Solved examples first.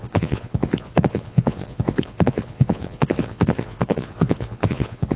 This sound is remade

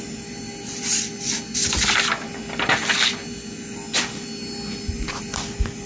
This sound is recorded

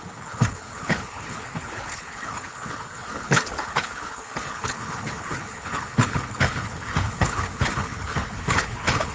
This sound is remade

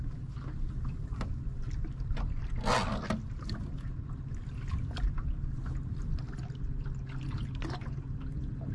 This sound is recorded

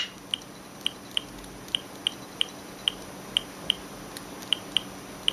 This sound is recorded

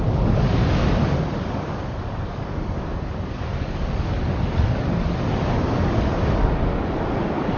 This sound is remade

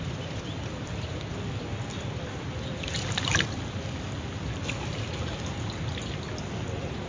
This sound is recorded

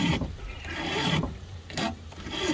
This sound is remade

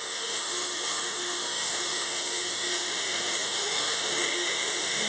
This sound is remade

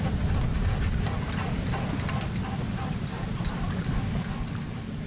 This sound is recorded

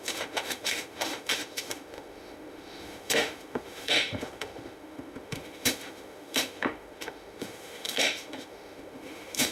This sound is remade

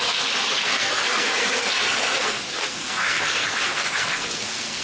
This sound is remade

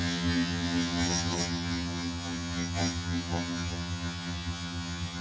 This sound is remade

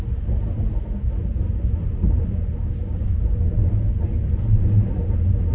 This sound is recorded